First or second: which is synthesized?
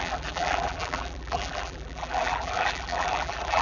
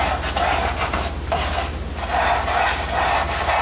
first